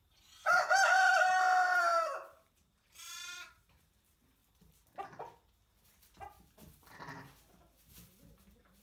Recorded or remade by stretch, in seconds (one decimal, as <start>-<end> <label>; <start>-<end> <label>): 0.0-1.9 recorded; 1.9-3.9 remade; 3.9-8.8 recorded